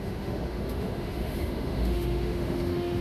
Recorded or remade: remade